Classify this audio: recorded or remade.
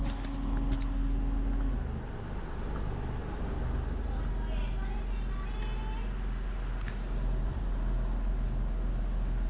recorded